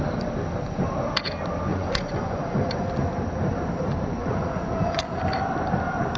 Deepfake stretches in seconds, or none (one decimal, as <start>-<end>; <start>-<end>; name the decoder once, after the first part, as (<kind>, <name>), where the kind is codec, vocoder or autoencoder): 1.7-2.9 (vocoder, Vocos); 4.2-5.0